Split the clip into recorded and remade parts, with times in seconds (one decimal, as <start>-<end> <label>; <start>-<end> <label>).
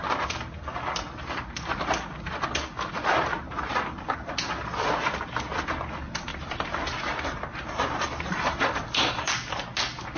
0.0-6.3 recorded; 6.3-9.3 remade; 9.3-10.2 recorded